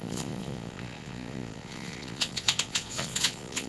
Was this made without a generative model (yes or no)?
no